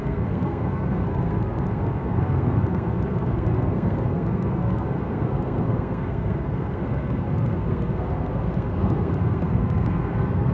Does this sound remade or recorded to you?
remade